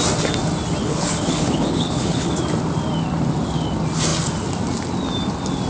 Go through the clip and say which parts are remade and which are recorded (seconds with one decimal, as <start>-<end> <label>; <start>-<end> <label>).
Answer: 0.0-0.8 recorded; 0.8-2.3 remade; 2.3-5.7 recorded